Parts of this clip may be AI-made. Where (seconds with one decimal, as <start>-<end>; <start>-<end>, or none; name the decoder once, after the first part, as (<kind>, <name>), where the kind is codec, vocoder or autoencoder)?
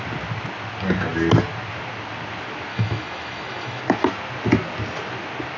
2.7-3.8 (autoencoder, DAC-VAE)